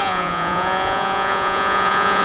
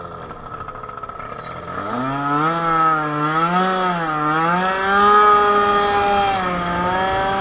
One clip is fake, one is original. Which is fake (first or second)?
first